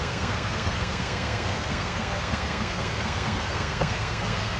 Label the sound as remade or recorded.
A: remade